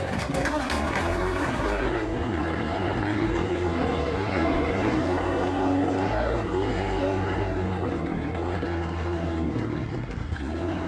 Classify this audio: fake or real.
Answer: fake